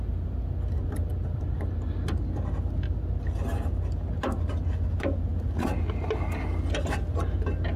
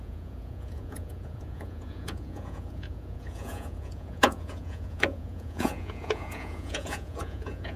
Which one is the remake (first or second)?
second